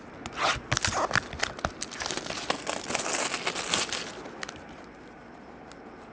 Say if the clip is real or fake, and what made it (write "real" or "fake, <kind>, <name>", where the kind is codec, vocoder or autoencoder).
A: real